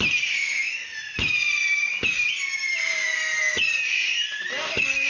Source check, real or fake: real